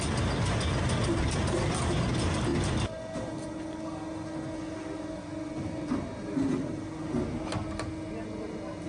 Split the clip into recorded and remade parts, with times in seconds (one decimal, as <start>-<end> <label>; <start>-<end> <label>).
0.0-8.9 recorded